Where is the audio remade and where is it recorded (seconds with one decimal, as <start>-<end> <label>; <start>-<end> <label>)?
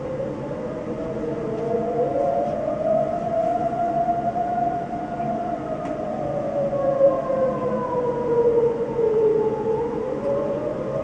0.0-1.0 remade; 1.0-1.6 recorded; 1.6-11.0 remade